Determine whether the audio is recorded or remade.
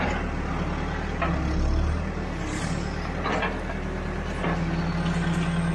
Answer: recorded